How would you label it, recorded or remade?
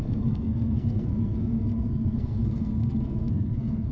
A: remade